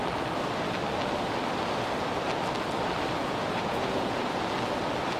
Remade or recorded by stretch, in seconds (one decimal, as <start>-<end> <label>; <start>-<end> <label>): 0.0-3.2 recorded; 3.2-4.4 remade; 4.4-5.2 recorded